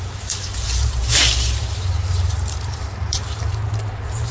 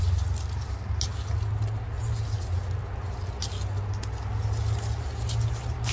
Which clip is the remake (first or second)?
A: first